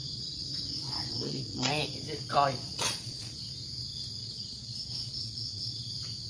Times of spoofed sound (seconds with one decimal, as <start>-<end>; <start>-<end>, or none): 0.0-1.7; 2.7-3.4; 4.2-5.8